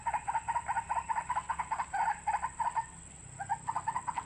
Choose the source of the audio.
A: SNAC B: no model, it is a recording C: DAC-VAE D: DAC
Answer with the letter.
B